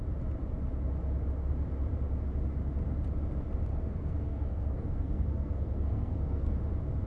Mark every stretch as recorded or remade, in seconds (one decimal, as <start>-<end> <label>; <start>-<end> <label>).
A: 0.0-3.7 recorded; 3.7-6.5 remade; 6.5-7.1 recorded